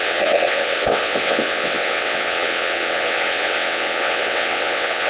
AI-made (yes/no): yes